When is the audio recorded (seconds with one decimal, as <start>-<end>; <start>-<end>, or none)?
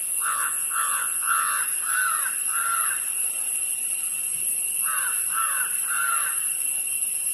1.6-7.3